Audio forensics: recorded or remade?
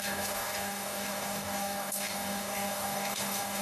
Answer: remade